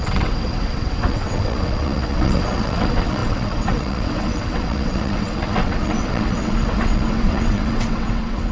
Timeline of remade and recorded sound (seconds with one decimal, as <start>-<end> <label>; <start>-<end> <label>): 0.0-8.5 remade